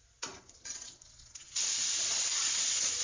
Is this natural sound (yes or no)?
no